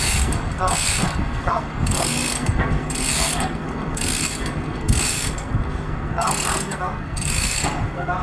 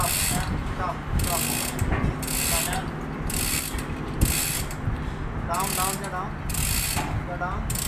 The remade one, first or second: first